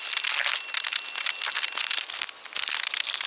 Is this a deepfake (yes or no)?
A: no